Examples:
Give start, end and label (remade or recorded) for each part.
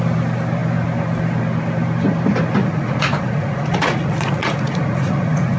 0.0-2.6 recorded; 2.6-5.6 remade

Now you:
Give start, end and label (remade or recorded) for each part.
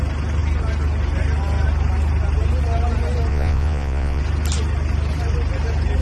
0.0-3.3 recorded; 3.3-4.2 remade; 4.2-6.0 recorded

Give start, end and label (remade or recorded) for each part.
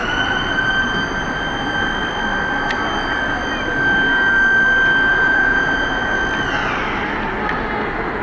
0.0-5.1 recorded; 5.1-6.2 remade; 6.2-8.2 recorded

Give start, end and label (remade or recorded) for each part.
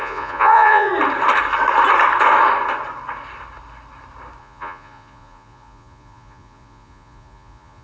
0.0-0.9 remade; 0.9-4.4 recorded; 4.4-7.8 remade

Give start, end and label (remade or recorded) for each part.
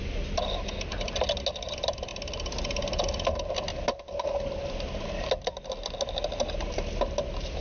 0.0-7.6 recorded